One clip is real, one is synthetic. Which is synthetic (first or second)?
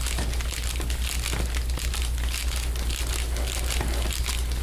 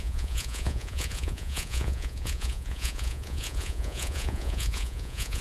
second